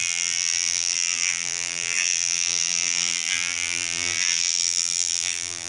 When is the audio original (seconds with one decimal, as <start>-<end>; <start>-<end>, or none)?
none